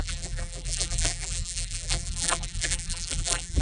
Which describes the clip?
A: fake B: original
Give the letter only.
A